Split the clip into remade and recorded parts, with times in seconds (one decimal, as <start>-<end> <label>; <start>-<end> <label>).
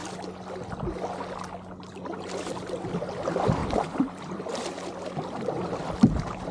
0.0-6.5 recorded